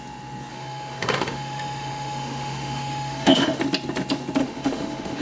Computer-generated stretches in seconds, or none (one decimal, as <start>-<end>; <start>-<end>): 0.5-3.6; 4.4-5.2

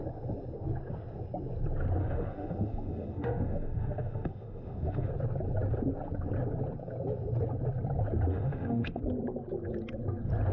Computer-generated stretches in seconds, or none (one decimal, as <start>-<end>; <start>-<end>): 2.0-5.1; 8.3-9.0

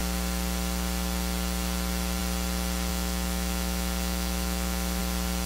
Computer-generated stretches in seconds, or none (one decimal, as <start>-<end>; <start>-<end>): 2.9-5.0